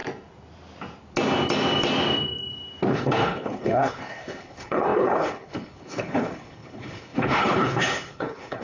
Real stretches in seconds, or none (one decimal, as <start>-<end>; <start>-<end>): 0.0-2.9